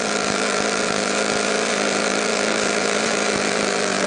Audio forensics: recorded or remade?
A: remade